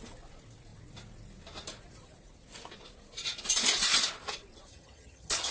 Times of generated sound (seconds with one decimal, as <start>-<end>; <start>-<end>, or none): 4.7-5.5

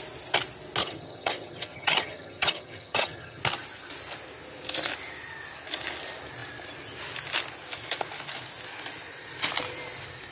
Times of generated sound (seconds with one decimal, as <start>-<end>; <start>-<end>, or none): 0.8-3.4

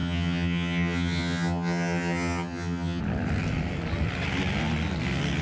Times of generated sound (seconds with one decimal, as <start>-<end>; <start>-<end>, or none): 0.0-3.0

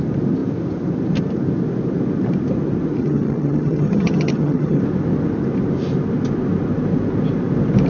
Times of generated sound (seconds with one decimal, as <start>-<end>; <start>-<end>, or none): 3.0-4.8

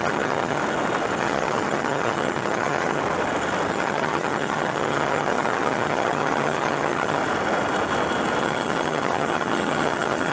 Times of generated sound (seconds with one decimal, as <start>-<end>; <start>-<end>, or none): 0.0-0.6; 1.2-3.0; 3.7-7.2; 8.4-10.3

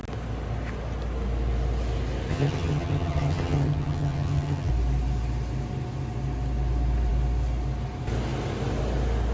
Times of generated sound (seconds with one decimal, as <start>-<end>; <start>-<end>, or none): 2.3-4.7

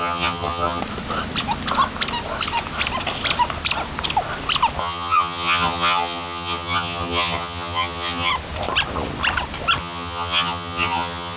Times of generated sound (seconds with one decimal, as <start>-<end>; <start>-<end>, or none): 0.0-0.8; 4.8-8.3; 9.8-11.4